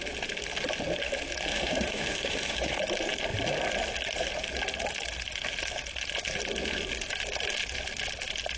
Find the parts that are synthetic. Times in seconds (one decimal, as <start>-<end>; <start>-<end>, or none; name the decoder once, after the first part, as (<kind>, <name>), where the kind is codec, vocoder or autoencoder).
1.5-2.8 (autoencoder, DAC-VAE)